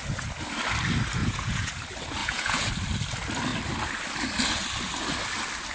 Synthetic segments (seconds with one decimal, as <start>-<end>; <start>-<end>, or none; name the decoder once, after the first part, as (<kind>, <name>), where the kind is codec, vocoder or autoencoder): 1.2-1.7 (vocoder, Vocos); 2.2-2.7